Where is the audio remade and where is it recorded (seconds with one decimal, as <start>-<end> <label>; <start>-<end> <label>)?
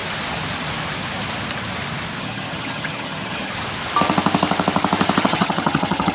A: 0.0-2.2 recorded; 2.2-3.5 remade; 3.5-5.2 recorded; 5.2-6.1 remade